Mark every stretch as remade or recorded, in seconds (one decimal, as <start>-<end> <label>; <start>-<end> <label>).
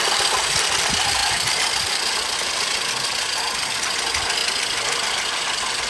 0.0-5.9 recorded